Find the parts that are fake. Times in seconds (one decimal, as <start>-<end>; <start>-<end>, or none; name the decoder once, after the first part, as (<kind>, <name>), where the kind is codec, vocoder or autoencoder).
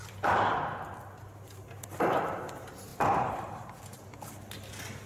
none